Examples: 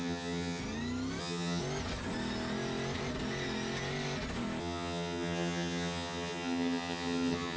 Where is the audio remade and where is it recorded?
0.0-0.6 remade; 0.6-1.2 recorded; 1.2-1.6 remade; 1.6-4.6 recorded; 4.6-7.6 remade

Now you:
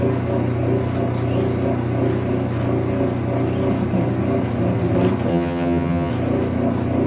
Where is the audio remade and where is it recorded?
0.0-5.3 recorded; 5.3-6.1 remade; 6.1-7.1 recorded

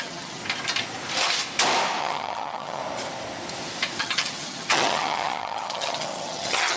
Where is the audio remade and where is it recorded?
0.0-0.4 remade; 0.4-2.0 recorded; 2.0-2.8 remade; 2.8-4.0 recorded; 4.0-6.8 remade

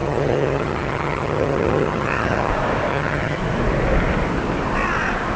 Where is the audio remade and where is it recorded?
0.0-2.5 remade; 2.5-2.9 recorded; 2.9-3.4 remade; 3.4-5.4 recorded

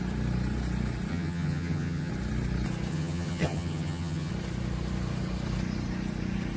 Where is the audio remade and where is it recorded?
0.0-1.1 recorded; 1.1-2.1 remade; 2.1-2.9 recorded; 2.9-4.3 remade; 4.3-6.6 recorded

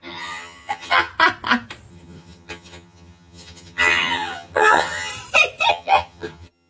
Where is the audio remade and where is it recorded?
0.0-1.1 remade; 1.1-1.9 recorded; 1.9-5.1 remade; 5.1-5.7 recorded; 5.7-6.7 remade

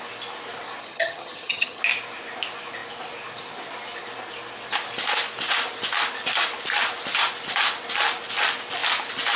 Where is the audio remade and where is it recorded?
0.0-0.8 recorded; 0.8-1.8 remade; 1.8-9.4 recorded